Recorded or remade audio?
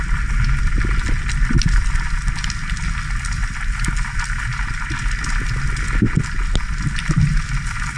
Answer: recorded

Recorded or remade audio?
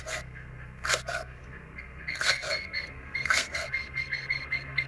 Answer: remade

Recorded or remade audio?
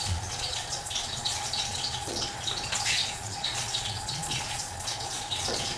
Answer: remade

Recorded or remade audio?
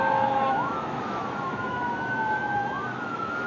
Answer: remade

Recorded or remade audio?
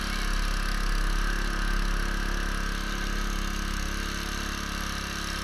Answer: recorded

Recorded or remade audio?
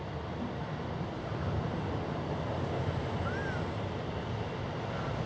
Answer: recorded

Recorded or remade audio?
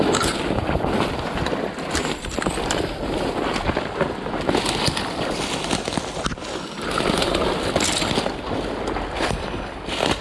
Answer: recorded